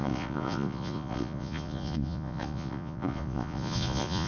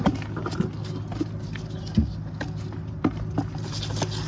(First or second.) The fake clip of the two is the first